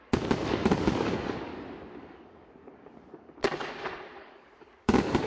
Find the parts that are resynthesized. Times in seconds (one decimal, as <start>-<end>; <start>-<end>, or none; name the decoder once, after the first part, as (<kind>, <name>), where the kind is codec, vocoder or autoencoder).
0.0-1.5 (codec, DAC); 2.0-3.4; 4.2-5.3